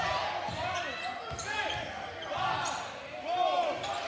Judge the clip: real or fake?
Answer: real